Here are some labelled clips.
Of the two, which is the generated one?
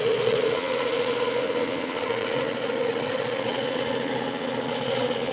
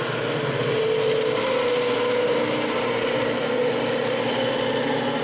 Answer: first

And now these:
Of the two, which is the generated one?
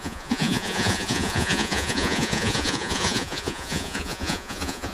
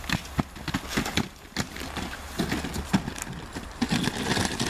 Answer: first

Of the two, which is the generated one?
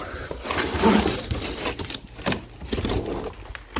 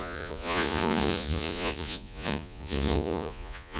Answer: second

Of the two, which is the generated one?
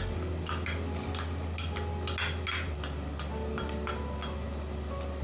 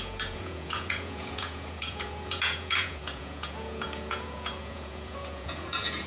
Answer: second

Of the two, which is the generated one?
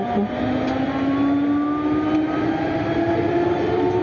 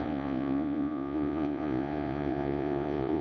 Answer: second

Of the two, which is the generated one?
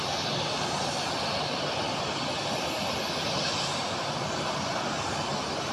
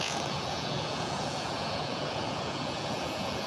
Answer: second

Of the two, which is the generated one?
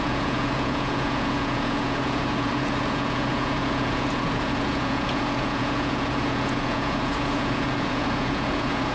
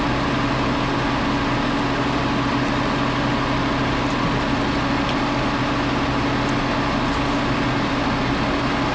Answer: first